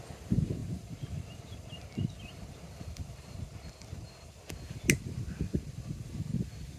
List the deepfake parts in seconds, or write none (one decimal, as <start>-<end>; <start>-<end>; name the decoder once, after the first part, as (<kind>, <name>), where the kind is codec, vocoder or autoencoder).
none

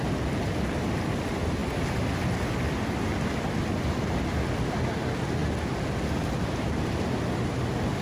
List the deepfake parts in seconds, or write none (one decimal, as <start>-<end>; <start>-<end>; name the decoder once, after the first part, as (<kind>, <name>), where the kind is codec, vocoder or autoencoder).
none